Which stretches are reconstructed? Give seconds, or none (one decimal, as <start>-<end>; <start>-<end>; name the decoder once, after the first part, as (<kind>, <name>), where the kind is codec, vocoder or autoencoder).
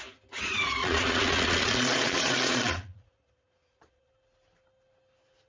0.8-4.1 (vocoder, Vocos)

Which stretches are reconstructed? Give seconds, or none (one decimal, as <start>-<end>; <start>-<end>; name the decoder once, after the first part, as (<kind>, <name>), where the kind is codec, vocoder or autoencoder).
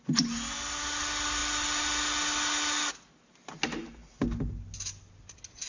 none